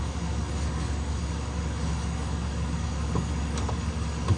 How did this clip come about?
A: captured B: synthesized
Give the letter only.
B